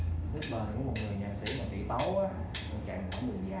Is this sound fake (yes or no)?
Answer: yes